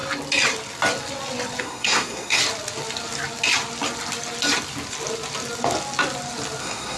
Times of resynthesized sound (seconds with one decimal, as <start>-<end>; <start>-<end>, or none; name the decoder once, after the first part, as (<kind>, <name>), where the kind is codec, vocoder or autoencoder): 1.6-2.4 (codec, SNAC); 6.6-7.0